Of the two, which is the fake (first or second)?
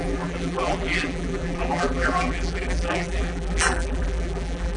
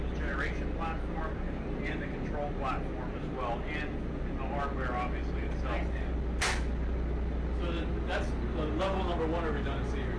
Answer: first